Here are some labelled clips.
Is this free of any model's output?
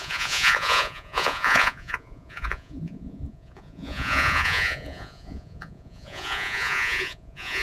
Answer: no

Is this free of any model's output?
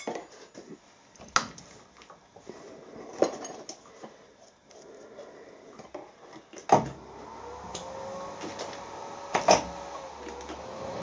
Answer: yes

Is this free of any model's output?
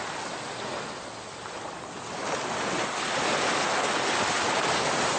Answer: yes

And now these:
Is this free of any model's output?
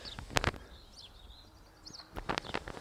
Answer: yes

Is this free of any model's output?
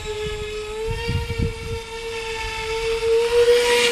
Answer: yes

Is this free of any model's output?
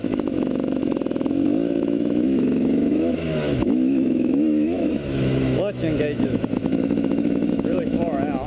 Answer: no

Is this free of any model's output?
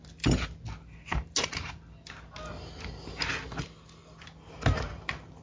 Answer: yes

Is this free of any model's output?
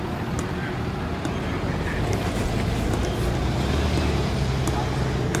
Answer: yes